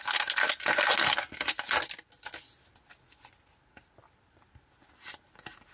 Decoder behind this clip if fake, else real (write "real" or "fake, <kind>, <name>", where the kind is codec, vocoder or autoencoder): real